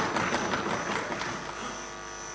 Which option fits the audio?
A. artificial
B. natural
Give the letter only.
B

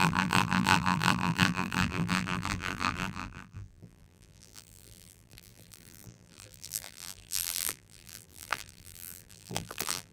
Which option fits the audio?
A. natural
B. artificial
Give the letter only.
B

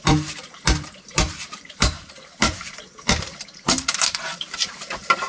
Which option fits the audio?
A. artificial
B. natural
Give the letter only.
A